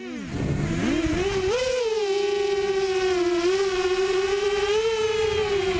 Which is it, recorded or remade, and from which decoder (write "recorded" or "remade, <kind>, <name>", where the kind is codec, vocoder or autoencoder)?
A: remade, vocoder, BigVGAN v2